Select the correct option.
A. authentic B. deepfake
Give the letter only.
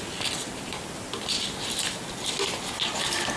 A